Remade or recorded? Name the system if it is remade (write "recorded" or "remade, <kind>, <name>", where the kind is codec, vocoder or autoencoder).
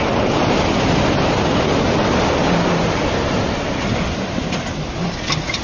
recorded